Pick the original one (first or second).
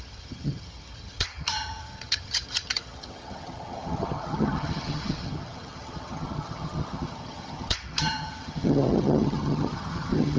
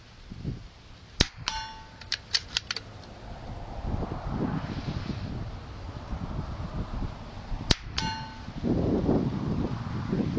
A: second